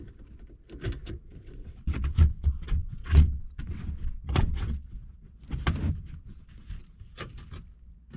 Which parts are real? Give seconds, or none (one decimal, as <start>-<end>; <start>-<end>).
0.0-1.0; 5.4-8.2

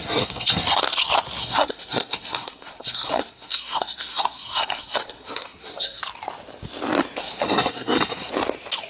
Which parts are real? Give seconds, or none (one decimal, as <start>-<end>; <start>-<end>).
0.8-1.4; 6.0-7.2; 8.3-8.9

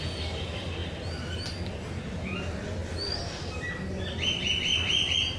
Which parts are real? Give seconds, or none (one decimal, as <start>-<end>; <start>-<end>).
0.0-4.7

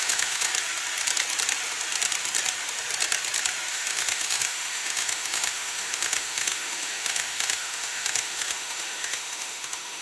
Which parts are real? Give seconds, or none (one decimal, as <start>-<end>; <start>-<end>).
0.5-3.7

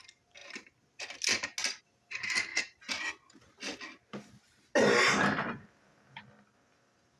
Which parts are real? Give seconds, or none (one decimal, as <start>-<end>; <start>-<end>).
0.0-7.2

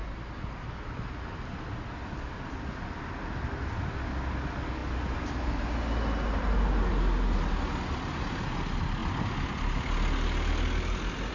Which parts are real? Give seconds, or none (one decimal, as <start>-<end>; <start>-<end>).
0.0-9.0; 9.5-11.3